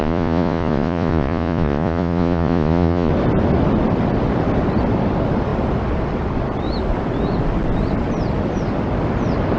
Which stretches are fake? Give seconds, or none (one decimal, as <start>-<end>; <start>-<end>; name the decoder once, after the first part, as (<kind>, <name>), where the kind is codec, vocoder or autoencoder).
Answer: 0.0-3.1 (vocoder, Vocos)